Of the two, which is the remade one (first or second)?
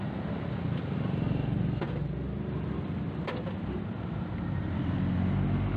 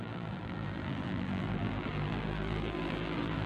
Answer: second